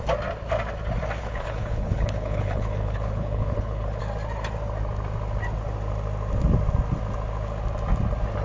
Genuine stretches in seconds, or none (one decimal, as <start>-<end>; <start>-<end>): 0.0-1.2; 4.0-8.4

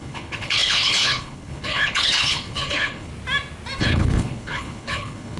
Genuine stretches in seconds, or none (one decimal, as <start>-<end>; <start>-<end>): 3.1-3.8

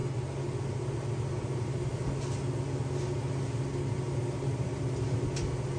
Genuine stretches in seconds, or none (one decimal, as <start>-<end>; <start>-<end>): 0.0-5.8

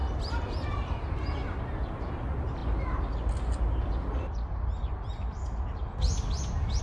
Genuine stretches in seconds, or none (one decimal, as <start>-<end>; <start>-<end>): 0.0-6.8

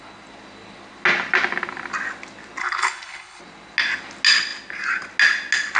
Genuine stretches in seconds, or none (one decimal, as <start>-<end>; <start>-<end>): 0.0-2.6; 3.4-5.8

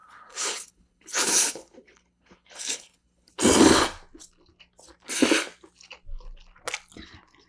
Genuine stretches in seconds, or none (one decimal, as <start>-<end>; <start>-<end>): 3.3-7.5